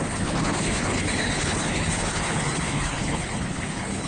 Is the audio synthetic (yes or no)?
yes